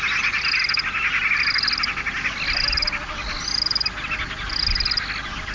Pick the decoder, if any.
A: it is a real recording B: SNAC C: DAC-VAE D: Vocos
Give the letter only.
A